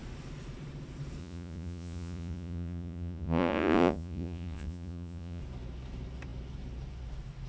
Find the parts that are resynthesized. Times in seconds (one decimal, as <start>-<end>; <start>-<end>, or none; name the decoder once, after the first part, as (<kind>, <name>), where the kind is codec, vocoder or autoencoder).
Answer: 1.2-5.4 (vocoder, Vocos)